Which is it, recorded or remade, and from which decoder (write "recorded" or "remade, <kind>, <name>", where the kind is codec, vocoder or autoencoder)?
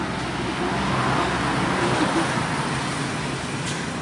recorded